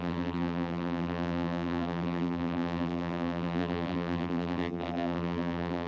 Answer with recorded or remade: remade